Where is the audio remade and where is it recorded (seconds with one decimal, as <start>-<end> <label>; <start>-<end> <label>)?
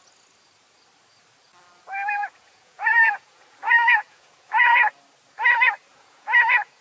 0.0-2.2 recorded; 2.2-4.9 remade; 4.9-5.9 recorded; 5.9-6.8 remade